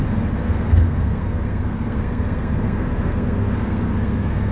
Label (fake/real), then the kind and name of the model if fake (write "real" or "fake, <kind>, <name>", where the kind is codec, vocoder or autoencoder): fake, codec, SNAC